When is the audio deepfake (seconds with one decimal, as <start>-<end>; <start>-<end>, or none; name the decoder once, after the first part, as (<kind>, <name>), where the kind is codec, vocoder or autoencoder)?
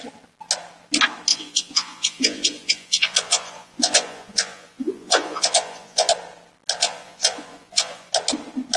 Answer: 1.3-6.1 (vocoder, Vocos); 6.8-8.1